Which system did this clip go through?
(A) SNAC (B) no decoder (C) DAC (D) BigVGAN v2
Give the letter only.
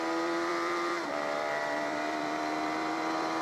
D